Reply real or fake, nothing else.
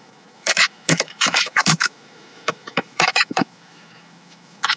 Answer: fake